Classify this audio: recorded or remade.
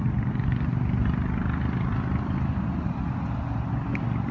recorded